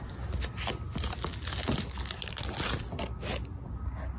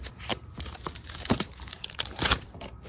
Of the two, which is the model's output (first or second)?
second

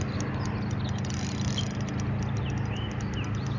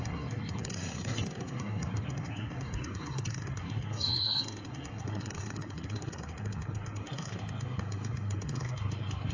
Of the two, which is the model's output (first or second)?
second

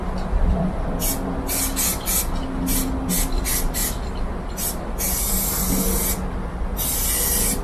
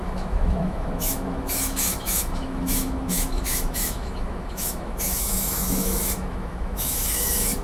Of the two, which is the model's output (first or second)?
second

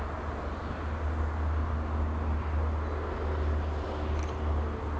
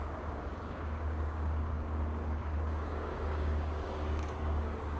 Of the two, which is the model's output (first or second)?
second